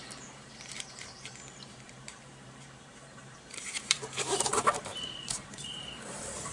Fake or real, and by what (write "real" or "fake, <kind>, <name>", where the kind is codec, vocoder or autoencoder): fake, vocoder, BigVGAN v2